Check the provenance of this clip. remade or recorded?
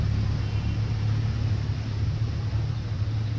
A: recorded